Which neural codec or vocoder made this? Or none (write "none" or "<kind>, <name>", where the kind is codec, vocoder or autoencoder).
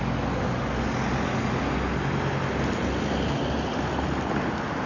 none